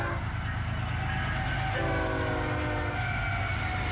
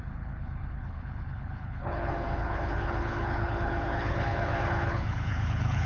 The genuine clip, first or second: first